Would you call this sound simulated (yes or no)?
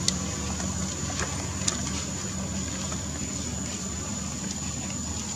no